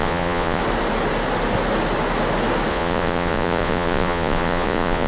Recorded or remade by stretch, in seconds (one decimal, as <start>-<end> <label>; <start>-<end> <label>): 0.0-0.6 remade; 0.6-2.7 recorded; 2.7-5.1 remade